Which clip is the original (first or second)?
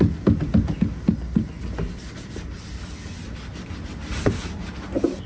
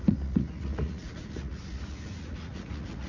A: first